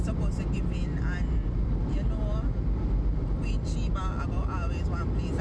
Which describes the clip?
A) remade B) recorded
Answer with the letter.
B